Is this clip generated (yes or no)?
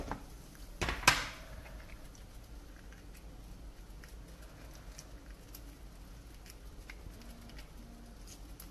no